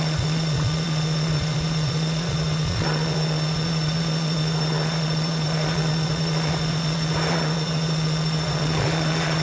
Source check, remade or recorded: remade